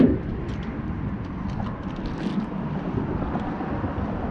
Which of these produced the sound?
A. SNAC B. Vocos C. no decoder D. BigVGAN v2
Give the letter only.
C